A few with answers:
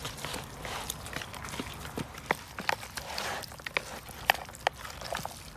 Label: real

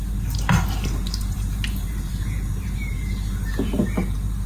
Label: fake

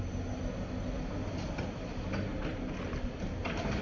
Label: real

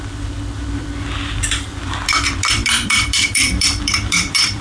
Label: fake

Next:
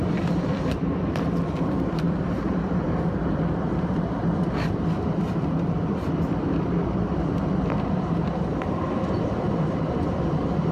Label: fake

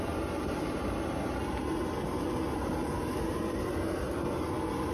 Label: real